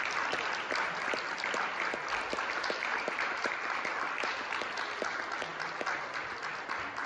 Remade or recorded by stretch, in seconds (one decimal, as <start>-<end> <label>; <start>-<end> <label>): 0.0-2.9 recorded; 2.9-3.5 remade; 3.5-7.1 recorded